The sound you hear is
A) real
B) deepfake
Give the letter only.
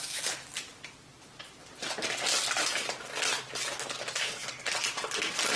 A